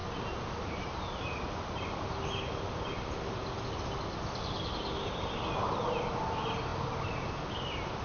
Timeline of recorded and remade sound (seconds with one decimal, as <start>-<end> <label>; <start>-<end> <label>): 0.0-8.0 recorded